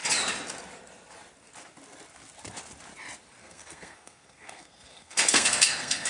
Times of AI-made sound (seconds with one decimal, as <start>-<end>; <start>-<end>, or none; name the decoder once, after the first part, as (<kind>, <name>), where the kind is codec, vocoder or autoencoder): 3.4-6.1 (codec, SNAC)